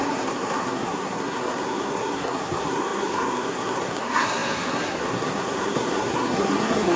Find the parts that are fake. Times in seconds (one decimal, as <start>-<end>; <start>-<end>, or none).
0.0-7.0